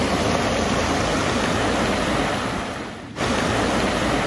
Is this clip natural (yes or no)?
yes